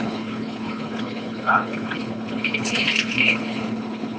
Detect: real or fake fake